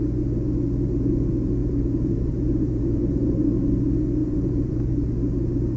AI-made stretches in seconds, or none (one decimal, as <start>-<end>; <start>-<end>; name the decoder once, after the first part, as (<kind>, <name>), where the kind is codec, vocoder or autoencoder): 1.6-3.5 (vocoder, BigVGAN v2); 4.2-5.1